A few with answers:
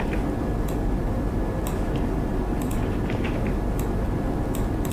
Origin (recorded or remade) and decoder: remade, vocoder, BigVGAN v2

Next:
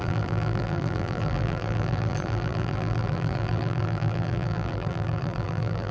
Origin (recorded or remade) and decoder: remade, vocoder, BigVGAN v2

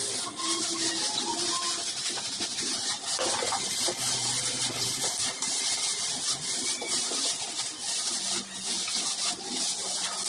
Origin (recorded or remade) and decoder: remade, vocoder, BigVGAN v2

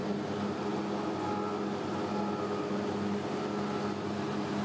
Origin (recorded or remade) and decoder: recorded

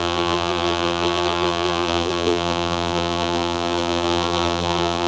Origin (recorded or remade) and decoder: remade, vocoder, BigVGAN v2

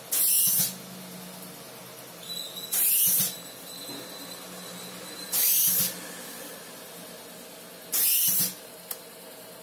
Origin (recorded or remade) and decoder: recorded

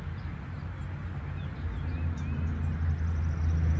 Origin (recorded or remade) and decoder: recorded